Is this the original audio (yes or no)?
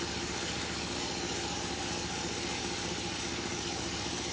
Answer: no